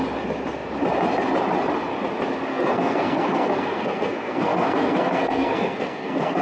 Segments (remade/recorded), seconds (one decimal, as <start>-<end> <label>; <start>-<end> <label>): 0.0-2.5 recorded; 2.5-6.4 remade